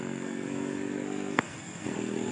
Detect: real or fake fake